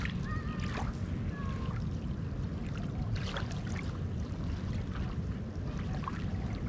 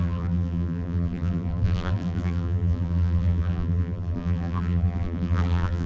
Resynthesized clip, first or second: second